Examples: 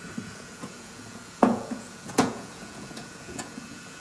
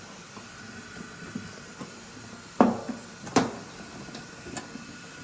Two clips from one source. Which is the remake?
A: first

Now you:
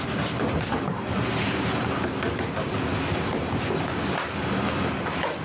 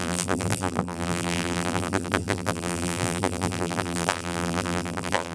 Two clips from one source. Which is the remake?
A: second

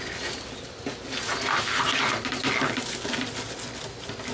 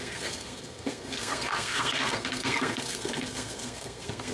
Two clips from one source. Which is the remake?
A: second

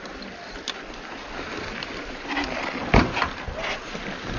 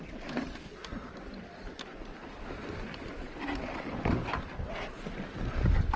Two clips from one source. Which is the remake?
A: second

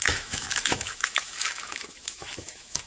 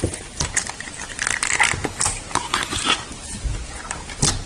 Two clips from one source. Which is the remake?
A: first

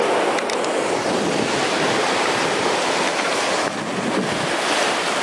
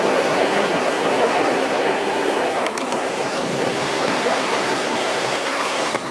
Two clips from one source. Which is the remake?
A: second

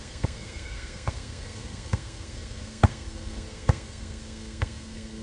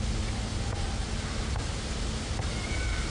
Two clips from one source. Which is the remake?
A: first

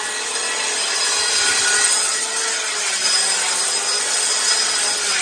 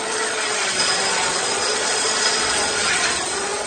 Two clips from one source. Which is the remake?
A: second